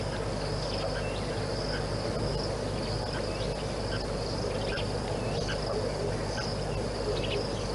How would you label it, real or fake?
real